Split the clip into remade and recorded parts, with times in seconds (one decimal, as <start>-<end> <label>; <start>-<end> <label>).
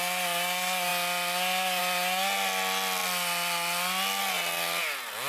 0.0-5.3 recorded